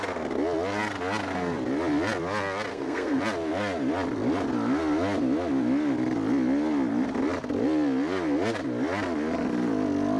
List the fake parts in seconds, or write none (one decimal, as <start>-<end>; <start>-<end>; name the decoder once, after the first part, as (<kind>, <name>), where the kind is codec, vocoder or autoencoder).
2.7-3.2 (codec, SNAC)